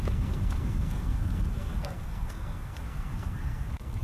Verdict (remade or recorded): remade